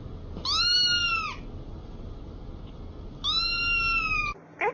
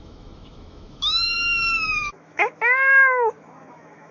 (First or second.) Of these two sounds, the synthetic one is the second